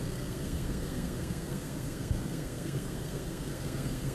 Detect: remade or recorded remade